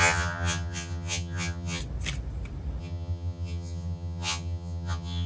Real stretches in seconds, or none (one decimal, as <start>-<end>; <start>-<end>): 1.8-2.8